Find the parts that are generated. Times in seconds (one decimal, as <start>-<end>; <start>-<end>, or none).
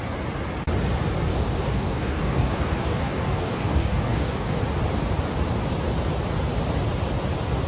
1.3-4.6